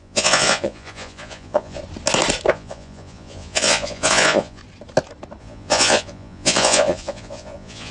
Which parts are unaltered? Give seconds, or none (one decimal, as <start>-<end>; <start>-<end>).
1.8-2.5; 4.6-5.4